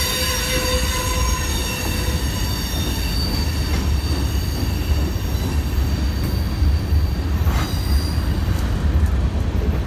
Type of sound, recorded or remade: recorded